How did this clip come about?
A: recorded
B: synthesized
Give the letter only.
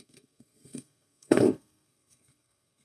B